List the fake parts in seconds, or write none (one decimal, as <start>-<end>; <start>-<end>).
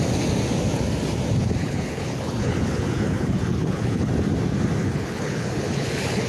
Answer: 1.6-4.1; 4.8-6.3